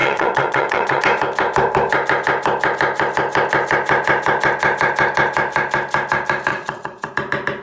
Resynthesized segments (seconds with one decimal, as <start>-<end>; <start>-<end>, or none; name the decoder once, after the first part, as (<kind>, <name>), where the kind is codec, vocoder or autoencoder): 0.0-1.0 (vocoder, WaveNeXt); 6.5-7.1